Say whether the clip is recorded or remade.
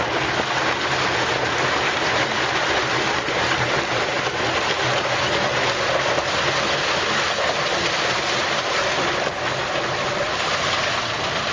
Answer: recorded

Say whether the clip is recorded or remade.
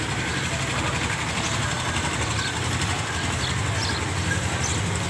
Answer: recorded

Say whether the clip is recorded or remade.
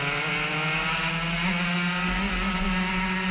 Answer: recorded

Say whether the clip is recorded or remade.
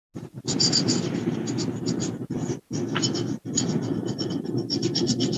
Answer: recorded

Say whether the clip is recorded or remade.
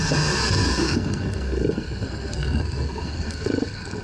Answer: remade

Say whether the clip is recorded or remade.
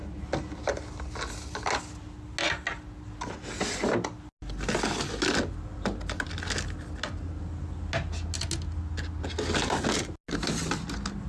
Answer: recorded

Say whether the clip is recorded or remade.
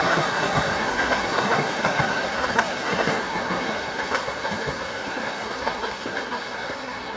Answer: remade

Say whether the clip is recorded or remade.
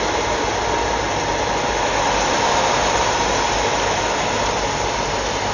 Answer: recorded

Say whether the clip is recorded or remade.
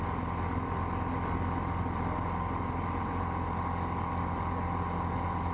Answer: recorded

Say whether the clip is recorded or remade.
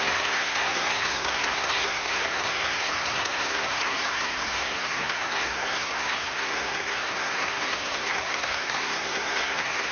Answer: remade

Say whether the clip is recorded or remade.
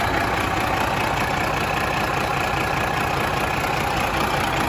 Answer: recorded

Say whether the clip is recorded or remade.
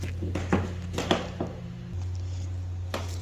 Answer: recorded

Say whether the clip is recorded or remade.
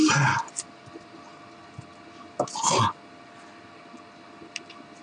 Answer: recorded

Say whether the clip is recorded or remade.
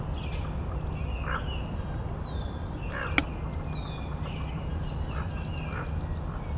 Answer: recorded